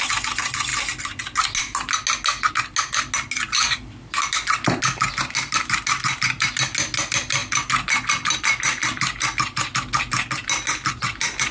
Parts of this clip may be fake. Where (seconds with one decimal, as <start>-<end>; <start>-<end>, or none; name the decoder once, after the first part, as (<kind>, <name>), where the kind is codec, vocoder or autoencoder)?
none